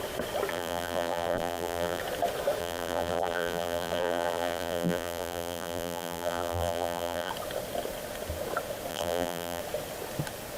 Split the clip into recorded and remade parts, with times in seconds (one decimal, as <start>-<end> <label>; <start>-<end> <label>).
0.0-0.5 recorded; 0.5-2.0 remade; 2.0-2.6 recorded; 2.6-7.3 remade; 7.3-8.9 recorded; 8.9-9.6 remade; 9.6-10.6 recorded